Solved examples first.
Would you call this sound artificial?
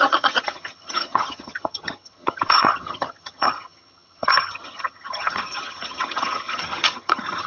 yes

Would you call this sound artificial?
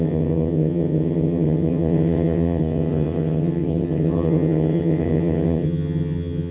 yes